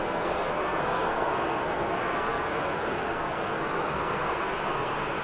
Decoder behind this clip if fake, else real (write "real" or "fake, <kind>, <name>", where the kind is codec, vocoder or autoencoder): fake, codec, SNAC